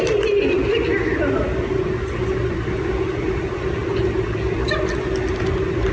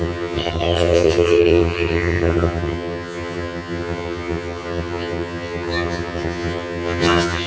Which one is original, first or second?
first